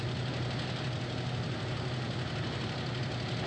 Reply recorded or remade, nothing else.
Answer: recorded